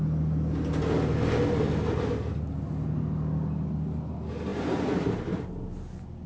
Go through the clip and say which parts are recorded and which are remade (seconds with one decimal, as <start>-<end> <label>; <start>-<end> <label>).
0.0-6.3 recorded